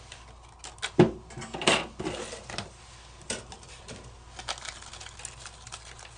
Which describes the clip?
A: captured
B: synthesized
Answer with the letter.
A